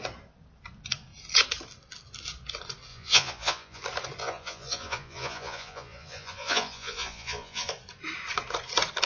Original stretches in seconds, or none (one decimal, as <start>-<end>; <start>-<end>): 0.0-2.9; 3.8-4.2; 7.7-9.1